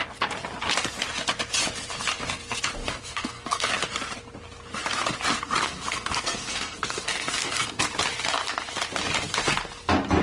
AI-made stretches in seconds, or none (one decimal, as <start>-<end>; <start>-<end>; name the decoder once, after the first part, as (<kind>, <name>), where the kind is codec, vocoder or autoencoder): 2.8-3.7 (codec, SNAC); 5.6-7.8

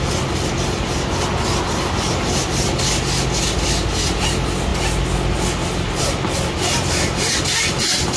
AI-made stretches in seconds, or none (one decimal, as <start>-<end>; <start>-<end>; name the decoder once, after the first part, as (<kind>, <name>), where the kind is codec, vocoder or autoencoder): none

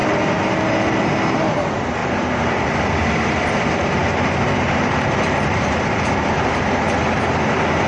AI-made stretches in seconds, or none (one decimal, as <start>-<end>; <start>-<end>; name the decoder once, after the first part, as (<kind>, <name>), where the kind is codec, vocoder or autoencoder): 2.0-2.9 (vocoder, BigVGAN v2); 4.0-7.0

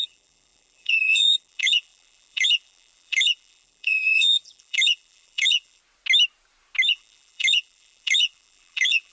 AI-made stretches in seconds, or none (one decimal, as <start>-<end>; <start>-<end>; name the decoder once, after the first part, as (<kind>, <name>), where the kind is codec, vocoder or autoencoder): 0.0-5.8 (vocoder, BigVGAN v2); 6.9-9.1

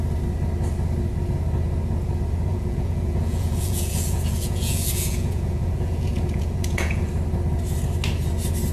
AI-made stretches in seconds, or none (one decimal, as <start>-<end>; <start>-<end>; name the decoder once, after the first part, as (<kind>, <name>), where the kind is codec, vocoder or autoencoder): 2.5-7.1 (vocoder, Vocos)